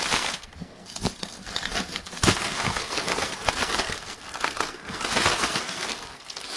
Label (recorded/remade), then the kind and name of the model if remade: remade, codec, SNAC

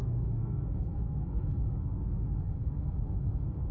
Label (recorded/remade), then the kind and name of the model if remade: remade, codec, SNAC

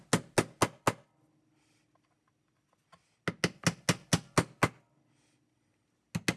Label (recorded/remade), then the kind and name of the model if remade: recorded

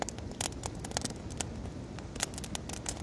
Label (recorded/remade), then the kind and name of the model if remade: recorded